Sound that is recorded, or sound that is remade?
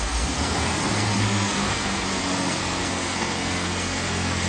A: remade